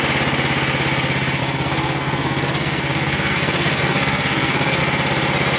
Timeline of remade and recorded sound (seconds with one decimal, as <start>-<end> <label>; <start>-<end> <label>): 0.0-1.4 recorded; 1.4-4.8 remade; 4.8-5.6 recorded